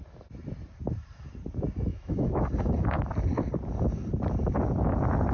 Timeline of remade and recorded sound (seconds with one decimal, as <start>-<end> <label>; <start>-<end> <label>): 0.0-1.9 recorded; 1.9-2.4 remade; 2.4-5.3 recorded

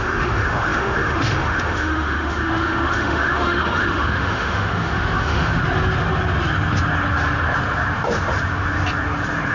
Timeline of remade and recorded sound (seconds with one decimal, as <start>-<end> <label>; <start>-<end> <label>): 0.0-5.6 remade; 5.6-9.5 recorded

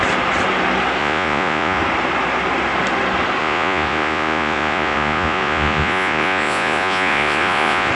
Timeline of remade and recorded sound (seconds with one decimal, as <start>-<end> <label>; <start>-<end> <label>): 0.0-1.0 recorded; 1.0-1.8 remade; 1.8-3.4 recorded; 3.4-7.9 remade